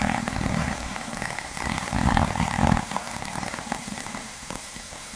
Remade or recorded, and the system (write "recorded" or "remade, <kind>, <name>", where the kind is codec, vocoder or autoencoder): remade, codec, SNAC